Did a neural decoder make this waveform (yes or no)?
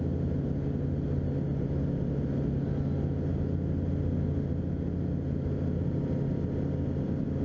no